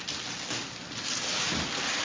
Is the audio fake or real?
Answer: real